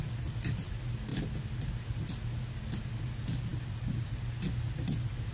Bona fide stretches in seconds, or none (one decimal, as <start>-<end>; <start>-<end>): 0.0-5.3